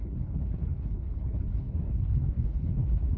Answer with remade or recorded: remade